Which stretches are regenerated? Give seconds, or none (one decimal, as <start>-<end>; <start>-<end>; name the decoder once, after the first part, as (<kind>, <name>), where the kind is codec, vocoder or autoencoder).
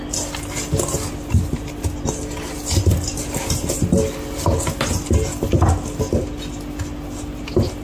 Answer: none